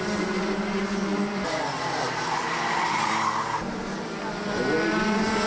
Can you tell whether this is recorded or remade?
recorded